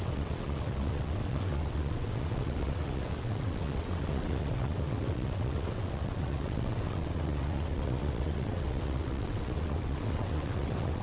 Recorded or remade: remade